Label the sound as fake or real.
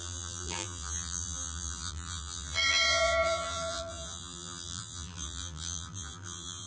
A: fake